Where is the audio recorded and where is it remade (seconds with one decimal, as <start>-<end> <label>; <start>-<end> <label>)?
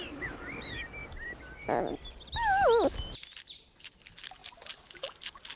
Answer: 0.0-5.6 recorded